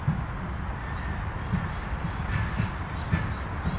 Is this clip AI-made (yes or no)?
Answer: no